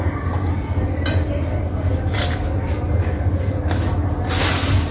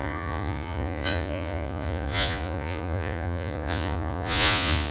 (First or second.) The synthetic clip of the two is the second